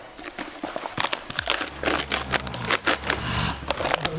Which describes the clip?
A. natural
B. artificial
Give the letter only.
A